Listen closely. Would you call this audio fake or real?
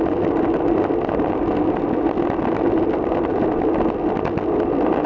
real